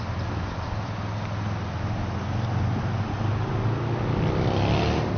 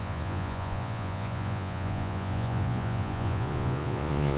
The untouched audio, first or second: first